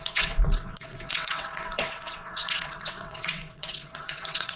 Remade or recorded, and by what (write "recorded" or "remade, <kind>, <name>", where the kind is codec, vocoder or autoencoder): remade, vocoder, WaveNeXt